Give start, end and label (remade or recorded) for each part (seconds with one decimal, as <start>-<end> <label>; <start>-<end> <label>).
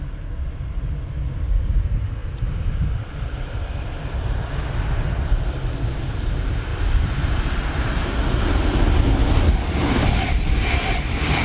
0.0-6.7 recorded; 6.7-7.9 remade; 7.9-11.4 recorded